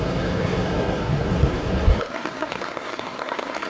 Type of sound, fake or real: fake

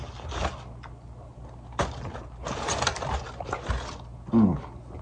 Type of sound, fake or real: real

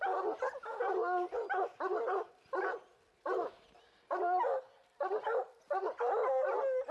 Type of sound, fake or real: real